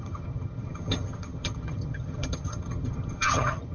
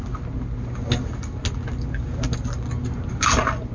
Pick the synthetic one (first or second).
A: first